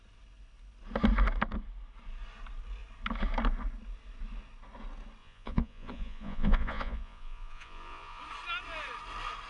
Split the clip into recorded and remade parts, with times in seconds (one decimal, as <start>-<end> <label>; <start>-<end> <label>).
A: 0.0-5.2 recorded; 5.2-8.2 remade; 8.2-9.5 recorded